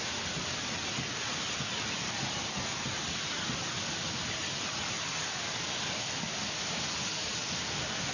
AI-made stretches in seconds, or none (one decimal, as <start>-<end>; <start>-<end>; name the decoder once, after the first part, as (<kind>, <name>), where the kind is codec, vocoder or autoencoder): none